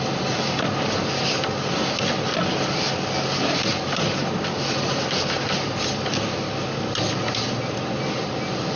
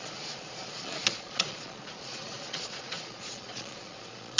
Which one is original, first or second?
first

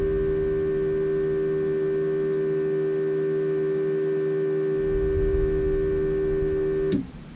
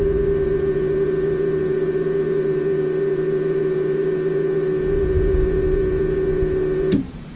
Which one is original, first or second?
first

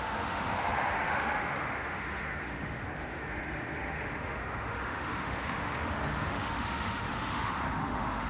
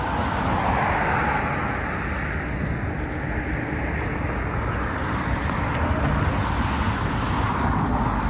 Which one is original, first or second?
second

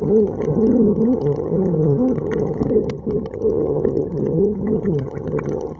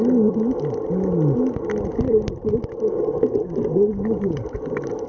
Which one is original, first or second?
second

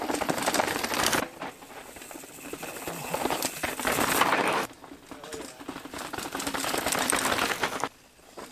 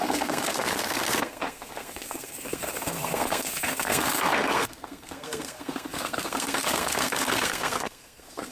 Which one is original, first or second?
first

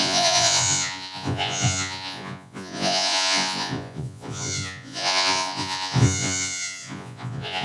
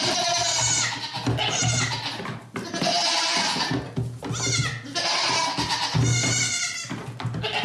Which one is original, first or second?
second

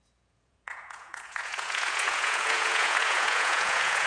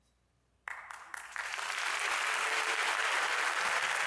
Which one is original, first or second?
second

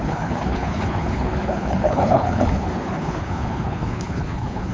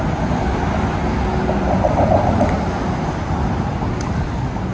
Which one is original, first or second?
second